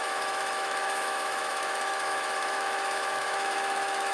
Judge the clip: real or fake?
fake